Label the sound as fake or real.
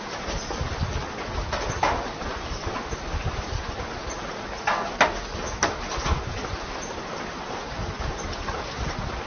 real